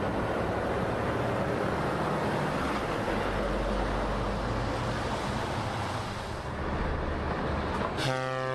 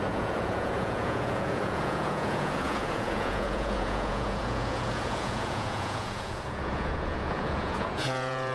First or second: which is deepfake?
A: second